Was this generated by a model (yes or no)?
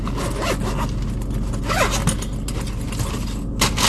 no